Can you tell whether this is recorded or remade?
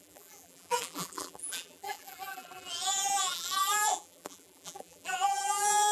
remade